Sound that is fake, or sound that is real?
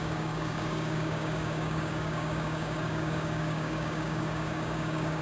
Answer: fake